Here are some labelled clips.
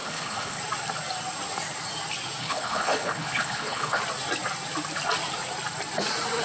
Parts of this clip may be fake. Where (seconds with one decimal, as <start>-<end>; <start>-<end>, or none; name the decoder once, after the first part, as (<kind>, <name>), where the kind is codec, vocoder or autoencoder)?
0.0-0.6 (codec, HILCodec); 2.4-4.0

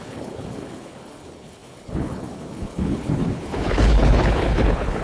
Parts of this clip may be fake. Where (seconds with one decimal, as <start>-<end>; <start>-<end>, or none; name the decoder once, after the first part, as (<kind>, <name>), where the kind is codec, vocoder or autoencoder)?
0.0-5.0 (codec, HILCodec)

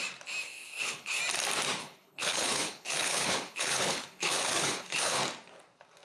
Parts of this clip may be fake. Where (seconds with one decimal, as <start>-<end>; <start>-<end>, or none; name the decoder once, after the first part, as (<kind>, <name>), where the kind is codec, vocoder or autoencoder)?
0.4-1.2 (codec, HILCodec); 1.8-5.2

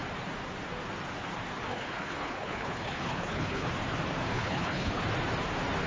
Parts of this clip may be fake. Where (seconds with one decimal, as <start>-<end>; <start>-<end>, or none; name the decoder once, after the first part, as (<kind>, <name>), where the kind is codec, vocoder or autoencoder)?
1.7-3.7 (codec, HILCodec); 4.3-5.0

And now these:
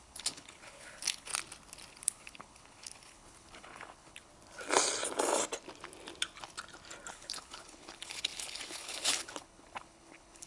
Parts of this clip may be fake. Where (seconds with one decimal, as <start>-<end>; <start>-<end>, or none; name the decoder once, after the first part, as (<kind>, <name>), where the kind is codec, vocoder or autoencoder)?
0.0-1.3 (codec, HILCodec); 1.9-4.3; 7.1-10.5

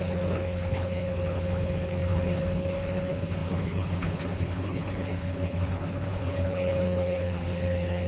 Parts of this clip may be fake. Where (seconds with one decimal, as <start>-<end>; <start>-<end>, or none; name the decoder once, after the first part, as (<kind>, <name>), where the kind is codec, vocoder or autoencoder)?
0.0-8.1 (codec, HILCodec)

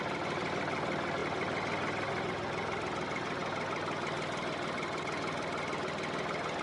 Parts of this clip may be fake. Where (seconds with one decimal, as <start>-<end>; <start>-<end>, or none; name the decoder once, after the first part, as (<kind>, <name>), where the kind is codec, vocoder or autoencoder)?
none